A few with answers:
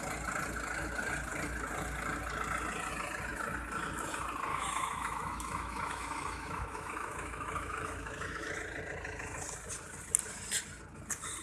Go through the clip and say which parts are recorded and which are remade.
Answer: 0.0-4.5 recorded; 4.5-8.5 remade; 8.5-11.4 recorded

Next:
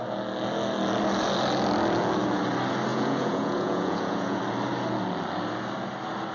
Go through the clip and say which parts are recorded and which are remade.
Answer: 0.0-2.9 recorded; 2.9-4.4 remade; 4.4-6.3 recorded

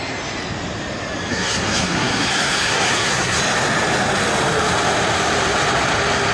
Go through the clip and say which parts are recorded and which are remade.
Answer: 0.0-1.3 recorded; 1.3-3.4 remade; 3.4-6.3 recorded

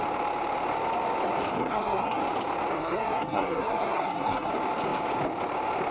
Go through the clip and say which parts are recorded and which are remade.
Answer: 0.0-1.6 recorded; 1.6-2.2 remade; 2.2-2.7 recorded; 2.7-4.5 remade; 4.5-5.9 recorded

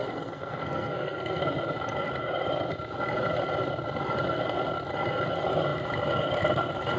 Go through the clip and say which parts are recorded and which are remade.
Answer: 0.0-1.4 remade; 1.4-7.0 recorded

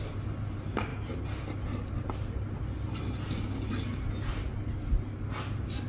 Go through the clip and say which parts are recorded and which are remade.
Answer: 0.0-5.9 recorded

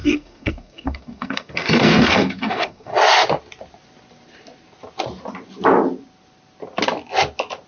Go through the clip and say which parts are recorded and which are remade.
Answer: 0.0-2.9 remade; 2.9-7.7 recorded